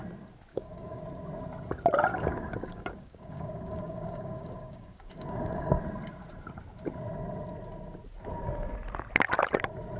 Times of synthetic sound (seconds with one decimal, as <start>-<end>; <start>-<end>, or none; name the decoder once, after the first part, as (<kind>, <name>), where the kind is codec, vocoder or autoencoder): 0.5-1.0 (codec, DAC); 2.1-5.8